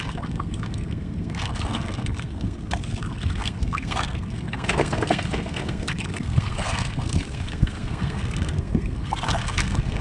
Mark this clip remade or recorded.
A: remade